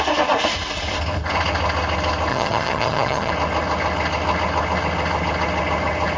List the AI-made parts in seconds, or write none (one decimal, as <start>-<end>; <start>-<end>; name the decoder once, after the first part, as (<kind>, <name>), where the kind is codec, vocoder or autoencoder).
2.3-3.3 (vocoder, HiFi-GAN)